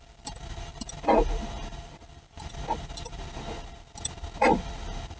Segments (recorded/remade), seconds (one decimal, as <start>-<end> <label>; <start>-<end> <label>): 0.0-5.2 recorded